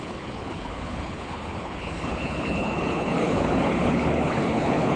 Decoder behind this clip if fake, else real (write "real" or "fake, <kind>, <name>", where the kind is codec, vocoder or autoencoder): fake, codec, HILCodec